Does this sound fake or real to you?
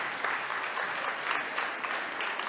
real